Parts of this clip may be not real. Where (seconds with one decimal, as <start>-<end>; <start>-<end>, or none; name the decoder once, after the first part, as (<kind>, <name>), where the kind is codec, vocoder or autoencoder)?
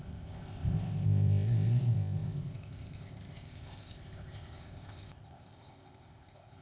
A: 0.0-6.6 (codec, ZipCodec)